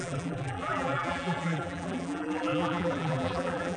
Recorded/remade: remade